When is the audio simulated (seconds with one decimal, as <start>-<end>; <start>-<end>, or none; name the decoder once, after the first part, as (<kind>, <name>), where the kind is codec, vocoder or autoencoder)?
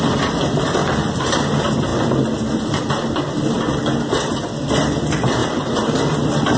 0.8-1.4 (vocoder, BigVGAN v2); 5.4-6.0